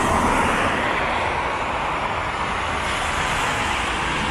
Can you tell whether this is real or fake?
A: real